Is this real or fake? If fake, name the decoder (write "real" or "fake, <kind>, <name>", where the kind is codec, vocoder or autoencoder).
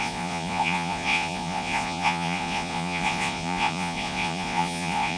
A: fake, vocoder, Vocos